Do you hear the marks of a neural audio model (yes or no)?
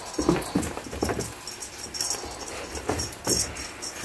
no